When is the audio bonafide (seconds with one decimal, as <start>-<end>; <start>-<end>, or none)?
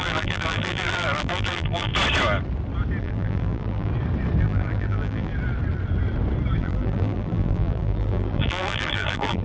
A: 1.9-3.0; 3.9-4.4; 5.3-6.6